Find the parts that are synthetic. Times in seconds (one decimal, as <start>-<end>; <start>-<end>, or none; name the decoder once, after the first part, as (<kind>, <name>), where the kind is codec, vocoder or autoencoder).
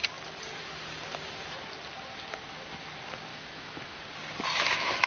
3.3-4.0 (autoencoder, DAC-VAE)